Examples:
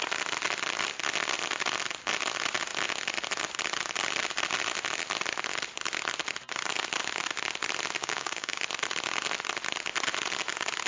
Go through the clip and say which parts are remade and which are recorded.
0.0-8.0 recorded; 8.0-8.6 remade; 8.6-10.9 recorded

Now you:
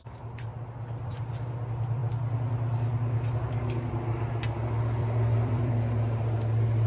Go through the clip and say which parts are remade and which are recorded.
0.0-5.0 recorded; 5.0-5.7 remade; 5.7-6.9 recorded

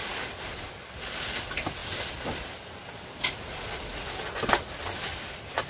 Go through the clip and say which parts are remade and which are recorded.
0.0-5.7 recorded

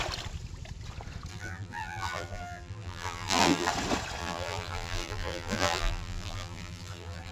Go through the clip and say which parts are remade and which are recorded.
0.0-1.3 recorded; 1.3-3.7 remade; 3.7-4.2 recorded; 4.2-7.3 remade

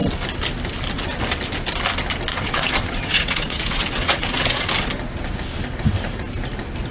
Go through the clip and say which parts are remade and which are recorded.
0.0-2.3 recorded; 2.3-4.7 remade; 4.7-6.9 recorded

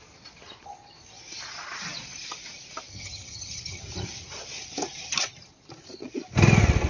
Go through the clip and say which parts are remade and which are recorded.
0.0-2.9 recorded; 2.9-3.8 remade; 3.8-6.9 recorded